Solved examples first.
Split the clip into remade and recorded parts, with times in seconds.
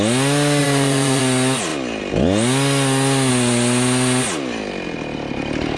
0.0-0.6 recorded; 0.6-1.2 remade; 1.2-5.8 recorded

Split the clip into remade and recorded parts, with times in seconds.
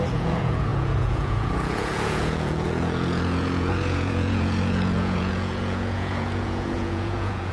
0.0-7.5 remade